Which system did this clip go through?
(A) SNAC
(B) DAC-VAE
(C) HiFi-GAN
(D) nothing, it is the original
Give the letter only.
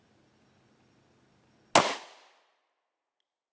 D